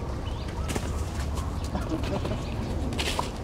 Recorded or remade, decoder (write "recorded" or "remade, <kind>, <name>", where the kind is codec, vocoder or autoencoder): recorded